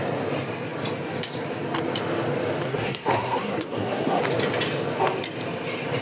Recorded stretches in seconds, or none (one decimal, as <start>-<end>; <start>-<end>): 0.0-2.7; 4.2-6.0